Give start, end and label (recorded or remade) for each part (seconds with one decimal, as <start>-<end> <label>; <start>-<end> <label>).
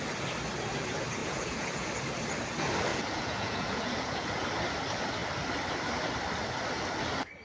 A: 0.0-1.2 recorded; 1.2-1.9 remade; 1.9-2.9 recorded; 2.9-4.5 remade; 4.5-7.4 recorded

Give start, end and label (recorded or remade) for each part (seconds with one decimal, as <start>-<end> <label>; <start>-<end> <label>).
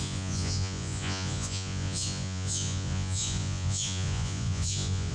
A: 0.0-5.1 remade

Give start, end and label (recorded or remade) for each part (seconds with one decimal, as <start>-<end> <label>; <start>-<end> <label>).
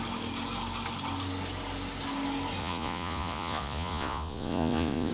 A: 0.0-2.6 recorded; 2.6-5.1 remade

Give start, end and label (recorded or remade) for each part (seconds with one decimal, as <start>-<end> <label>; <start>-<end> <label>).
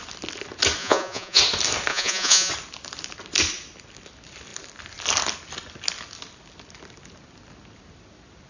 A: 0.0-0.8 recorded; 0.8-1.4 remade; 1.4-1.9 recorded; 1.9-2.5 remade; 2.5-8.5 recorded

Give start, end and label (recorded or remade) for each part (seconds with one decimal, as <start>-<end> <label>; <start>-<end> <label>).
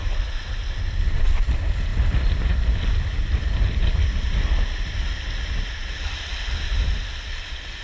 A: 0.0-7.8 recorded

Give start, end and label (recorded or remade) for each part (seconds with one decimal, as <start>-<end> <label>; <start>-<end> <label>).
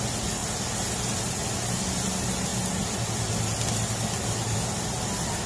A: 0.0-5.5 recorded